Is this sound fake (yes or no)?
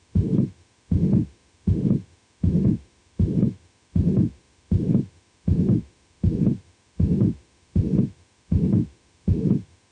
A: yes